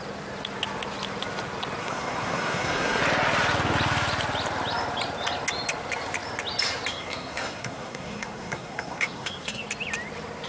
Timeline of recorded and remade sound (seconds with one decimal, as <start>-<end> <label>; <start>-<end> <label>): 0.0-1.8 recorded; 1.8-3.0 remade; 3.0-6.9 recorded; 6.9-9.6 remade; 9.6-10.5 recorded